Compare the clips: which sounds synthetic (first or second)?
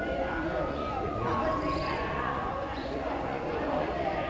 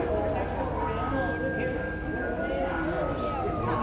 first